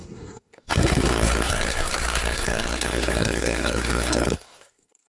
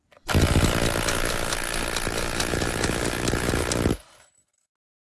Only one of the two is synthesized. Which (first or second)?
first